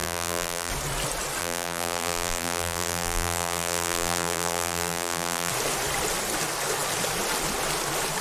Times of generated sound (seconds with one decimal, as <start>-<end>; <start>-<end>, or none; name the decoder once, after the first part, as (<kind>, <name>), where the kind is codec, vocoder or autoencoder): 0.0-0.7 (vocoder, BigVGAN v2); 1.4-5.5

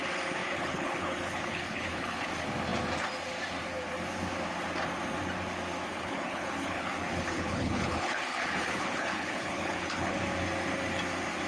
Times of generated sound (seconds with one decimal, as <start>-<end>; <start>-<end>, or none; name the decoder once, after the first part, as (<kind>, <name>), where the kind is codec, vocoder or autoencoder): 0.4-2.3 (codec, HILCodec); 5.9-10.1

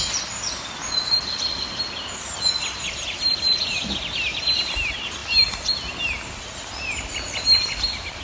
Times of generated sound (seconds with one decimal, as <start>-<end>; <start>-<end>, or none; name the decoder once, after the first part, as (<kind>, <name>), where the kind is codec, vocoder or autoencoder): none

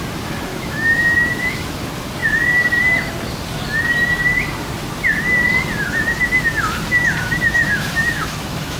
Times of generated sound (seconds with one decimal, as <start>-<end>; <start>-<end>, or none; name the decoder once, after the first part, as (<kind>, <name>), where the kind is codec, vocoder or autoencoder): 0.5-1.7 (autoencoder, DAC-VAE); 7.6-8.8

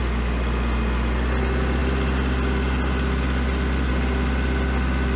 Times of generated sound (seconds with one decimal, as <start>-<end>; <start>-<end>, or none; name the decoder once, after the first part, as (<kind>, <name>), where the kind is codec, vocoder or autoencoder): none

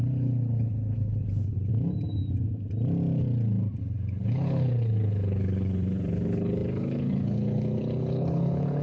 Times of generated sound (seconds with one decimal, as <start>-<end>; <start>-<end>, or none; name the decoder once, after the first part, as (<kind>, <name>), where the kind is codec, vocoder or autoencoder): 0.0-1.7 (codec, HILCodec); 3.8-8.8

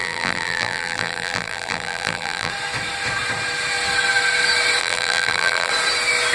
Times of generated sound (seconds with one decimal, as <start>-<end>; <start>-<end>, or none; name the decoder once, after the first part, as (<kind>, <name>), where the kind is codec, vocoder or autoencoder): 0.0-2.5 (vocoder, BigVGAN v2); 4.8-5.7

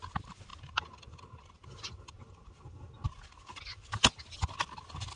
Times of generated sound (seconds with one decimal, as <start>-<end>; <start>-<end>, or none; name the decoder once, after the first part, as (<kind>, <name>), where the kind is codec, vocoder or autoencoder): none